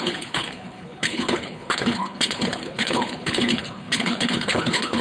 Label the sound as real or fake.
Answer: fake